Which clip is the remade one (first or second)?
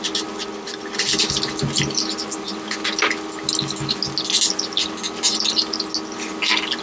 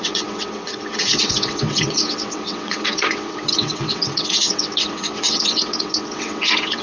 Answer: second